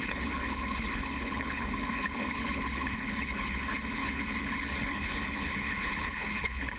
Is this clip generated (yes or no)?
yes